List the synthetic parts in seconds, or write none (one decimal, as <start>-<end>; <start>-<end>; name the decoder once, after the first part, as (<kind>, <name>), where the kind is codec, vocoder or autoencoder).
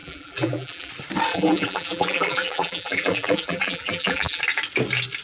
0.0-0.9 (vocoder, BigVGAN v2); 1.3-4.4